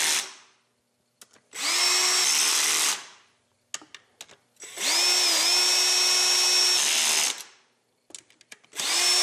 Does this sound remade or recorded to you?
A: recorded